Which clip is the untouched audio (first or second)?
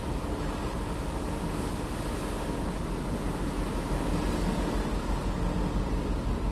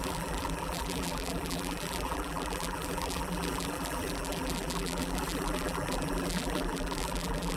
first